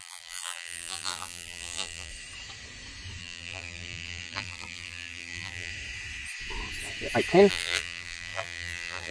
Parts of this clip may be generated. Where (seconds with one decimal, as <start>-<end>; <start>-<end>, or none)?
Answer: 0.0-2.1; 3.2-5.7; 7.5-9.1